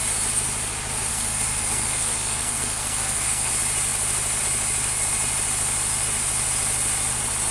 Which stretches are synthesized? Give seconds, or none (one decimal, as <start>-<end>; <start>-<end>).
1.1-3.5